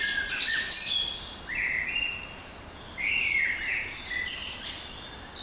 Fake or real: real